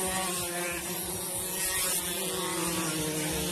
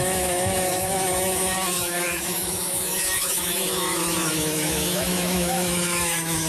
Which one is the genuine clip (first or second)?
first